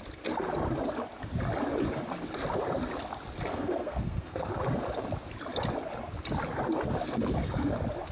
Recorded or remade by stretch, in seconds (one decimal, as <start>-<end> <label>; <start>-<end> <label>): 0.0-3.5 recorded; 3.5-4.5 remade; 4.5-8.1 recorded